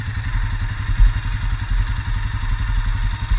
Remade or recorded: recorded